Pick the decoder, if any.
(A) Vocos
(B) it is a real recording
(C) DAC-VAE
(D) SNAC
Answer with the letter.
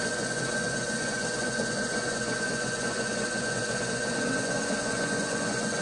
A